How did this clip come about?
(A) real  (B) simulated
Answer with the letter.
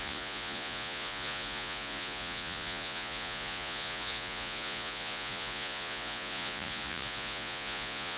B